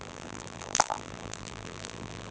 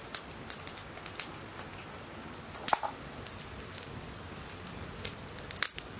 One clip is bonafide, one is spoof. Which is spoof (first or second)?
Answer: first